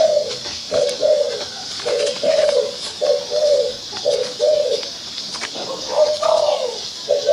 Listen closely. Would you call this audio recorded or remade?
remade